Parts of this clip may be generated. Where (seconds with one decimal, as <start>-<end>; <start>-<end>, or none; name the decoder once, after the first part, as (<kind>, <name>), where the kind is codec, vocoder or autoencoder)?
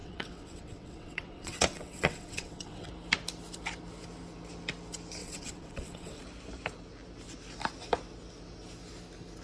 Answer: 0.0-2.9 (vocoder, WaveNeXt); 5.2-6.2